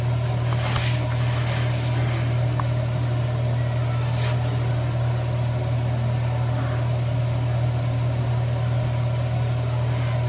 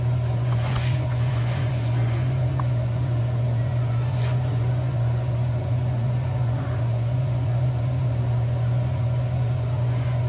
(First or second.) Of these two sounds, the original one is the first